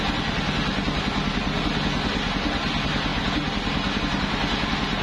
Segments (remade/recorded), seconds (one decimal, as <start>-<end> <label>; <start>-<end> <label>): 0.0-5.0 recorded